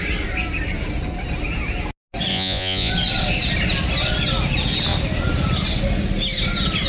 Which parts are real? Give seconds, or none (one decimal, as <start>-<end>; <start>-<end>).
0.0-2.3; 2.9-6.9